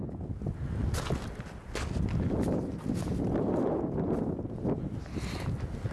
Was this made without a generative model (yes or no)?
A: yes